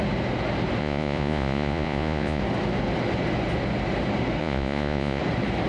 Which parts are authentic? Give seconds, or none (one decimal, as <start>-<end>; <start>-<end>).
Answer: 0.0-0.8; 2.4-4.4; 5.2-5.7